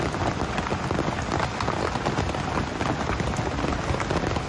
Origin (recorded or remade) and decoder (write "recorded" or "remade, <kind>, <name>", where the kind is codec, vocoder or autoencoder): recorded